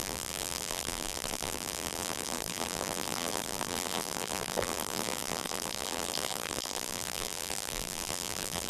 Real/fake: fake